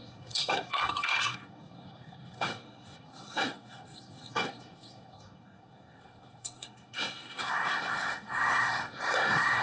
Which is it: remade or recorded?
remade